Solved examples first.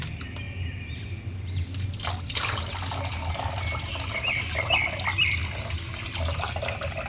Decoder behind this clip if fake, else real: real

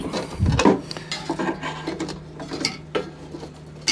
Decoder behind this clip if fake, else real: real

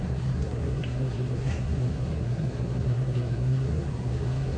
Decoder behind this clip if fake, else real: fake, codec, SNAC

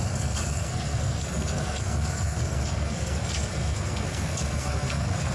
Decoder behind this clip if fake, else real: fake, codec, SNAC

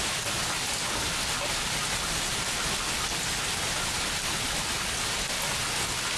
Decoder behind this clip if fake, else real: real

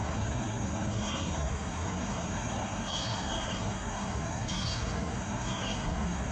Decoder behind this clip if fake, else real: fake, codec, SNAC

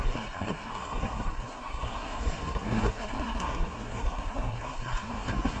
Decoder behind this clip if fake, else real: fake, codec, SNAC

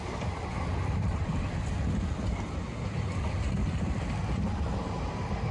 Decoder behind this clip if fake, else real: real